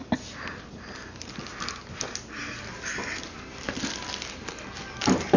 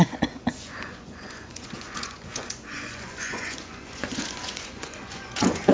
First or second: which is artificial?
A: second